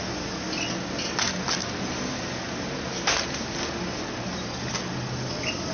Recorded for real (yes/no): yes